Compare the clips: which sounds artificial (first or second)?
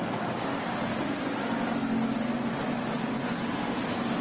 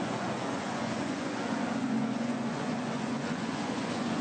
second